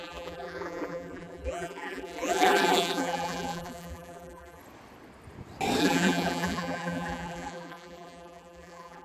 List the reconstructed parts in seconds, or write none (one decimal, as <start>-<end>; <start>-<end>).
0.0-4.6; 5.8-9.0